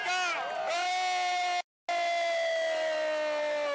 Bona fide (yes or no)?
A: yes